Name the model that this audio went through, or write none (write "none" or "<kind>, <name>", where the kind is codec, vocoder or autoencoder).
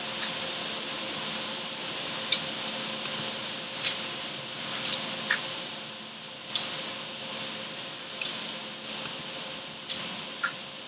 none